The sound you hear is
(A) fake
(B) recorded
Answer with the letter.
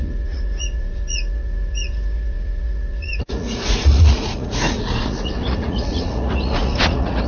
A